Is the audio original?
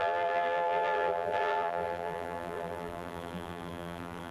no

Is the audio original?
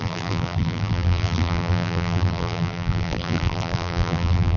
no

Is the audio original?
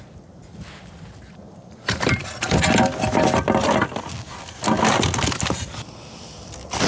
yes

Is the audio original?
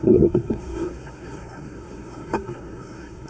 no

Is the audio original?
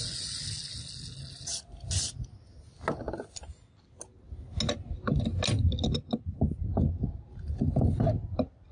yes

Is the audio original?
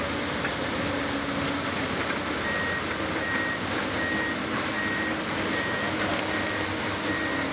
yes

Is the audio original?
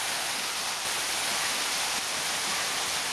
yes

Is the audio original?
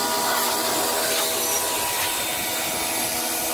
yes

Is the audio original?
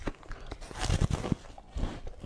yes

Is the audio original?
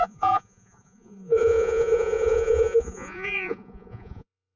no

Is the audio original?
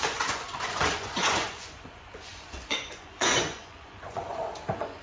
no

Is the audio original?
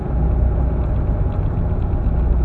yes